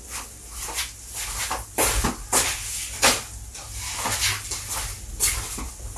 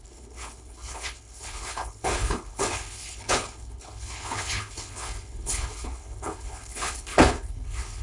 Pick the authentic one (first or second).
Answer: first